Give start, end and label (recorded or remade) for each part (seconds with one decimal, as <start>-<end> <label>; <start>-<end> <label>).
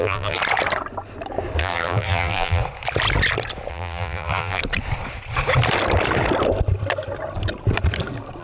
0.0-0.4 remade; 0.4-1.6 recorded; 1.6-2.6 remade; 2.6-3.7 recorded; 3.7-4.6 remade; 4.6-8.4 recorded